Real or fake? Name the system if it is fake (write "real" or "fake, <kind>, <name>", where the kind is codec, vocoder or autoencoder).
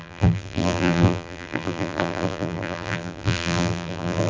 fake, vocoder, BigVGAN v2